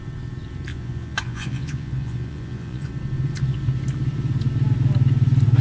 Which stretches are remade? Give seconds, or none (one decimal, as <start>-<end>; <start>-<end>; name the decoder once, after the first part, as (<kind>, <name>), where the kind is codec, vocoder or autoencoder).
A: 0.7-2.9 (vocoder, Vocos)